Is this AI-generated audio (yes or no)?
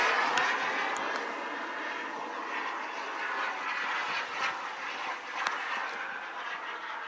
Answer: no